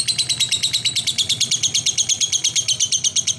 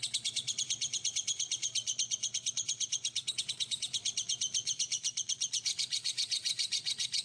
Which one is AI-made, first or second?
second